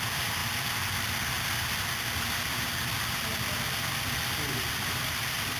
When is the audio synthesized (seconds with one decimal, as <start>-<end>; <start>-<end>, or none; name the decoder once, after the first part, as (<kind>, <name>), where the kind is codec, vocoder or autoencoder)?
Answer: 0.0-0.4 (vocoder, BigVGAN v2); 3.8-5.6

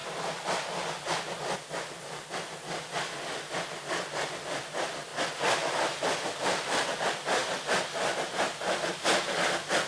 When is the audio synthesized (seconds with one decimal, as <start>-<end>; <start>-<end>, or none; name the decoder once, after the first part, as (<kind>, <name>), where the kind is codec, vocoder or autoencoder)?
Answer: 2.3-7.4 (vocoder, BigVGAN v2); 8.4-9.9

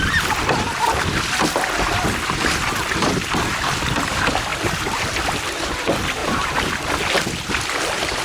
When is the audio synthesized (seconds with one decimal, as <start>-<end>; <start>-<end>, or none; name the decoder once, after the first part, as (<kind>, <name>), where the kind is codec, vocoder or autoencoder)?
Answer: 6.2-6.7 (vocoder, BigVGAN v2)

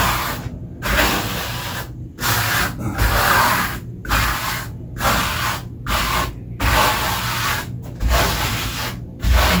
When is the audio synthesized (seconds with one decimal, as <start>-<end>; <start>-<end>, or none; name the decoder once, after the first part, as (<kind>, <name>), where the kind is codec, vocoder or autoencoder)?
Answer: none